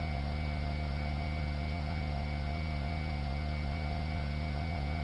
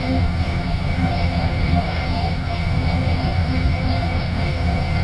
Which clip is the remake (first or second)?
second